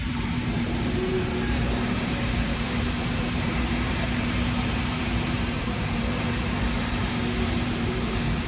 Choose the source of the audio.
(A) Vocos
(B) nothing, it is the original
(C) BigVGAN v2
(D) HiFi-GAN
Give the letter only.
C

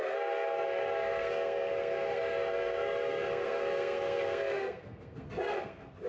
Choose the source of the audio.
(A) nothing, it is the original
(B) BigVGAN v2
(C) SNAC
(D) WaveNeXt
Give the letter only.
C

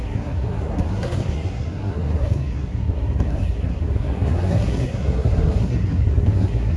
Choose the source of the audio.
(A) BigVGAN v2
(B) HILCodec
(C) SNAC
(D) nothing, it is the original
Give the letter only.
C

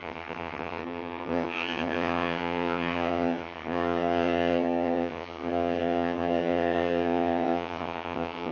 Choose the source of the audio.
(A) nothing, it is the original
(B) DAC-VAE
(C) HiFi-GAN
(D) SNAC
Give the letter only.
C